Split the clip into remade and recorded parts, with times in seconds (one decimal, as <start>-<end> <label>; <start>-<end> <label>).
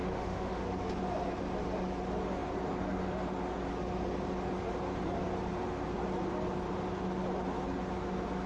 0.0-0.6 remade; 0.6-8.5 recorded